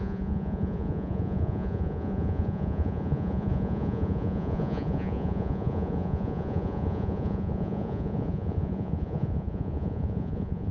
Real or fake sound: fake